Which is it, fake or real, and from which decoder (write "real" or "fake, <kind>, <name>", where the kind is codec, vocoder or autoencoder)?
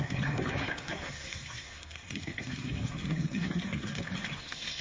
fake, codec, SNAC